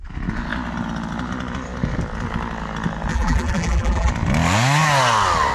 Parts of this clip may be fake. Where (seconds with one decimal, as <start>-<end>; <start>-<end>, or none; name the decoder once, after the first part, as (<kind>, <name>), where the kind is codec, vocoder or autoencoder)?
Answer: 3.1-4.1 (vocoder, BigVGAN v2)